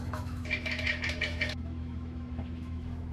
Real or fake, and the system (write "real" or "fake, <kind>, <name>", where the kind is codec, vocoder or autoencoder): fake, autoencoder, DAC-VAE